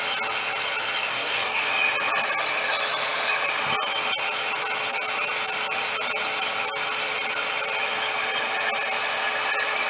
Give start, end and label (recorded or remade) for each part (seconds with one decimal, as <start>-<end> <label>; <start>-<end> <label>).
0.0-1.1 recorded; 1.1-1.7 remade; 1.7-9.9 recorded